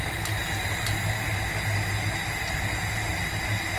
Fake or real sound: real